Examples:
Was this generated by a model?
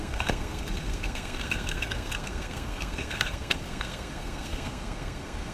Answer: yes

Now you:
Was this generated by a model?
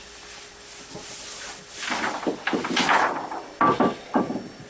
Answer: no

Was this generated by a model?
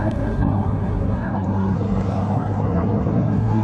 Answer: yes